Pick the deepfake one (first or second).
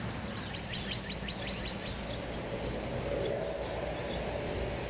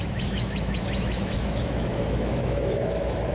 second